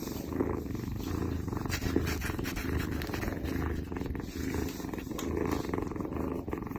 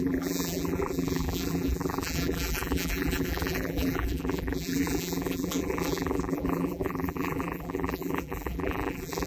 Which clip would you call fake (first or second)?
second